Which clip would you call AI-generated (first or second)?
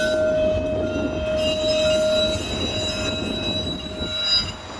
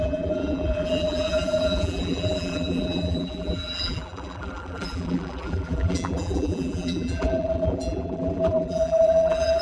second